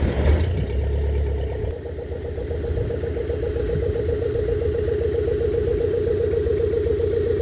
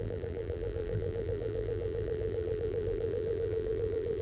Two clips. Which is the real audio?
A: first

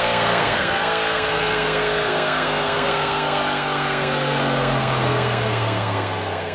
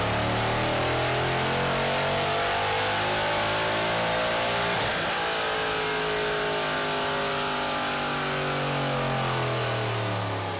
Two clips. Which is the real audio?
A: second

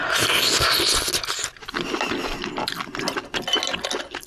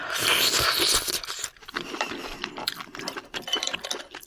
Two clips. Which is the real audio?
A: first